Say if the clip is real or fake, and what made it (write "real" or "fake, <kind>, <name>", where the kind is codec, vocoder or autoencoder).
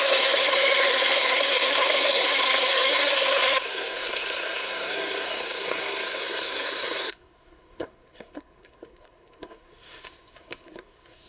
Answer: fake, codec, SNAC